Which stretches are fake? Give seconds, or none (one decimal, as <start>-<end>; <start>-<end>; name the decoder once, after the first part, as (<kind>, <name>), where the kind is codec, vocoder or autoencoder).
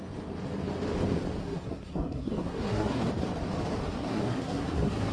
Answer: 1.4-3.0 (codec, SNAC); 3.8-5.1